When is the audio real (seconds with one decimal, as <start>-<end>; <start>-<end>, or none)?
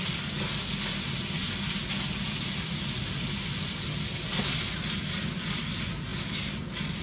0.0-7.0